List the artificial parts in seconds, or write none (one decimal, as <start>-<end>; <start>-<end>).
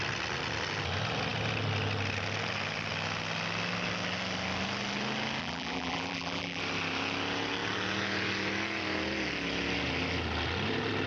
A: 5.4-6.6